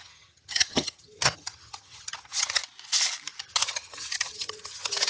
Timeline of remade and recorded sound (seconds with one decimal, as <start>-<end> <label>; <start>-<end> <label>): 0.0-2.6 remade; 2.6-3.4 recorded; 3.4-5.1 remade